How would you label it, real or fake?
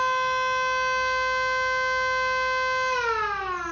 real